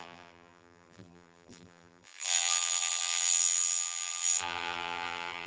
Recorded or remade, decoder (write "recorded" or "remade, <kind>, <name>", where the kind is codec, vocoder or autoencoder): remade, vocoder, BigVGAN v2